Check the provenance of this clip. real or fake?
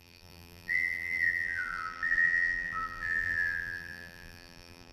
fake